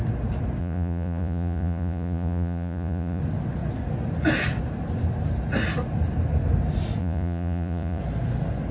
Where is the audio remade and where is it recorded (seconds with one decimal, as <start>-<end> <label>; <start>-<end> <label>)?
0.0-0.6 recorded; 0.6-3.2 remade; 3.2-7.0 recorded; 7.0-8.0 remade; 8.0-8.7 recorded